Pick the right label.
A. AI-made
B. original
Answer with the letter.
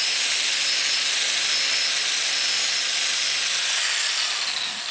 B